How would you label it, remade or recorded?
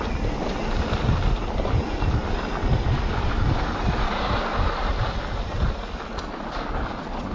recorded